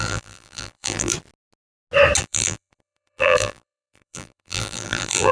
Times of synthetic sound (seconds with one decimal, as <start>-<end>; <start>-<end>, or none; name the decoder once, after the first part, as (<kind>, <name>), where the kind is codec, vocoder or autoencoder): 0.0-1.1 (vocoder, BigVGAN v2); 2.2-5.3